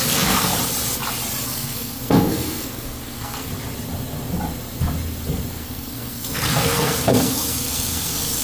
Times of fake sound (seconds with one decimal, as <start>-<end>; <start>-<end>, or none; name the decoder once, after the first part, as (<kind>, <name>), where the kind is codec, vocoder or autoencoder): 0.0-0.5 (codec, SNAC); 1.4-3.5; 5.5-8.4